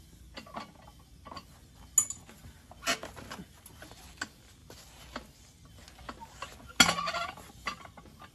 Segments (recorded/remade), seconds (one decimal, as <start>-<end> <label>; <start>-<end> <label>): 0.0-8.3 recorded